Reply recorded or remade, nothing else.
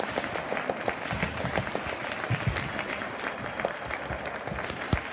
recorded